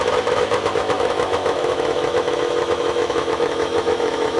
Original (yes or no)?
no